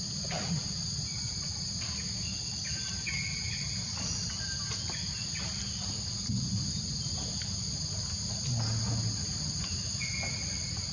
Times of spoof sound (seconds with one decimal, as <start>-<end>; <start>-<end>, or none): none